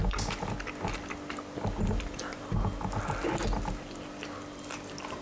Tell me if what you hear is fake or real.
real